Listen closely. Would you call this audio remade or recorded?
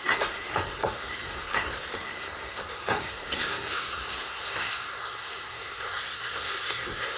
remade